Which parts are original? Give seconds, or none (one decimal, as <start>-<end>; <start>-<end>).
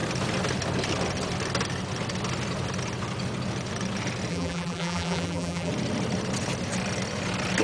0.0-4.3; 5.7-7.6